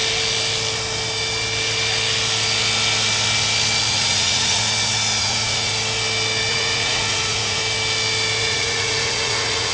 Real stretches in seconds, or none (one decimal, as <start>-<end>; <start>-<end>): 0.0-3.9; 4.6-5.2; 5.7-6.5; 7.6-8.4